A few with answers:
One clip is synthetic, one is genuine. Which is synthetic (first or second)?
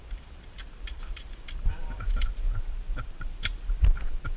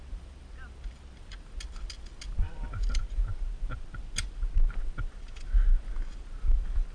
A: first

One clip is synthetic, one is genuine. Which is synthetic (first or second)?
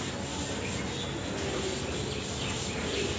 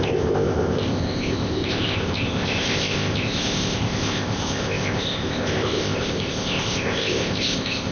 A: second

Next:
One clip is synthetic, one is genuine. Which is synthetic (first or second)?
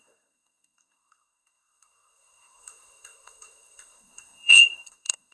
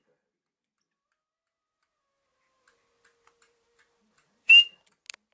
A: first